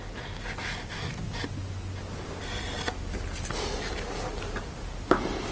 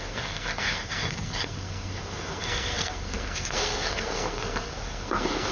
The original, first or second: first